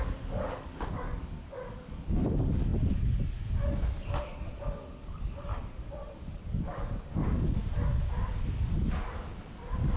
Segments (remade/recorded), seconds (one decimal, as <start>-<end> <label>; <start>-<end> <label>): 0.0-5.5 remade; 5.5-6.2 recorded; 6.2-7.6 remade; 7.6-8.3 recorded; 8.3-10.0 remade